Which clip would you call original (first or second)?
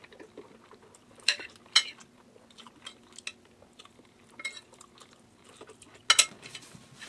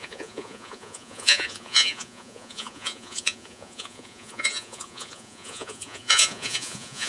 first